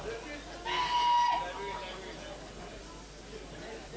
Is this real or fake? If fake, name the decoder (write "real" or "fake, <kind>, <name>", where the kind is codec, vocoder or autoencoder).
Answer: real